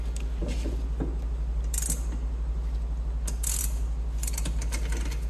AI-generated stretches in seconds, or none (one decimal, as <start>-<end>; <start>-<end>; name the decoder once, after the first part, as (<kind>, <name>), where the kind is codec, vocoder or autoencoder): none